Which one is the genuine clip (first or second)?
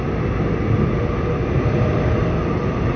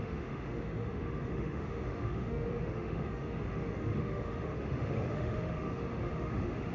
first